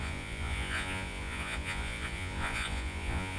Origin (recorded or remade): remade